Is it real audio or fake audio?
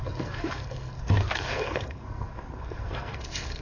fake